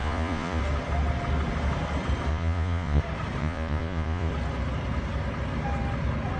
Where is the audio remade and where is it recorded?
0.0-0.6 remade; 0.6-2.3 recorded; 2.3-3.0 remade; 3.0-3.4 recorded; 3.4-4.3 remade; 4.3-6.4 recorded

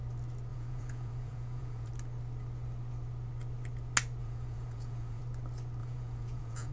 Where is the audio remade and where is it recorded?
0.0-0.5 recorded; 0.5-1.9 remade; 1.9-4.2 recorded; 4.2-5.2 remade; 5.2-5.8 recorded; 5.8-6.7 remade

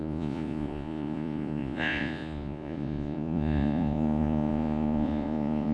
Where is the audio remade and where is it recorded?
0.0-5.7 remade

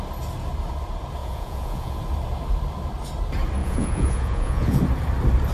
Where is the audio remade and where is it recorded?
0.0-1.2 recorded; 1.2-2.0 remade; 2.0-3.6 recorded; 3.6-4.8 remade; 4.8-5.5 recorded

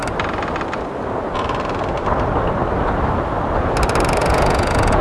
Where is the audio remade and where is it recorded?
0.0-4.2 recorded; 4.2-5.0 remade

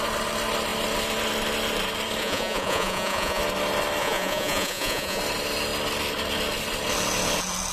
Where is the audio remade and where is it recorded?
0.0-2.2 recorded; 2.2-3.4 remade; 3.4-4.0 recorded; 4.0-5.2 remade; 5.2-7.7 recorded

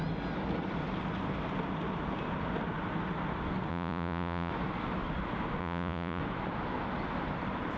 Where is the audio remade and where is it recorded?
0.0-3.7 recorded; 3.7-4.5 remade; 4.5-5.6 recorded; 5.6-6.2 remade; 6.2-7.8 recorded

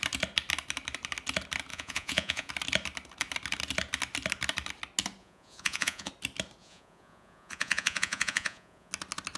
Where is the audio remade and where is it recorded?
0.0-1.7 recorded; 1.7-2.5 remade; 2.5-5.2 recorded; 5.2-6.1 remade; 6.1-6.6 recorded; 6.6-8.9 remade; 8.9-9.4 recorded